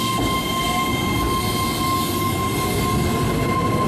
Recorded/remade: recorded